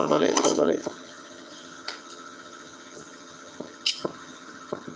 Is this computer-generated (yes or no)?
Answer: yes